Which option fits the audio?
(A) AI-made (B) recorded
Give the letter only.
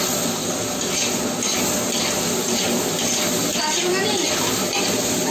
B